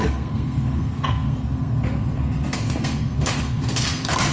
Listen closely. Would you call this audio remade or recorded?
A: remade